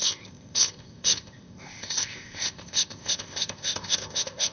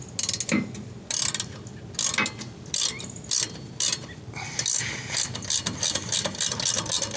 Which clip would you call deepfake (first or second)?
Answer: first